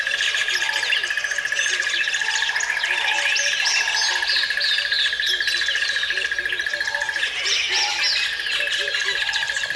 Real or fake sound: real